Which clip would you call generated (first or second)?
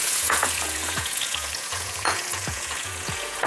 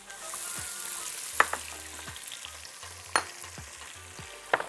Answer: first